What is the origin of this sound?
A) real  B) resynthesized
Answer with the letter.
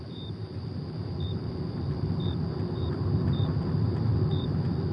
B